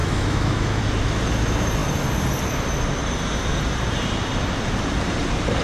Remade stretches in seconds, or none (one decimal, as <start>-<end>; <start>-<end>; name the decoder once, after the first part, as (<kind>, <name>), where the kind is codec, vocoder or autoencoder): 0.0-0.8 (autoencoder, DAC-VAE)